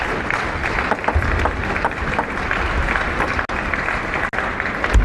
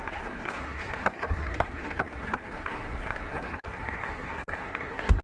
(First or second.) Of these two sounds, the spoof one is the second